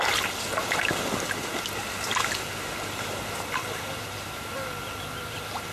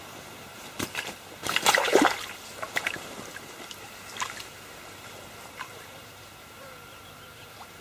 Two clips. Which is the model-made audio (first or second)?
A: second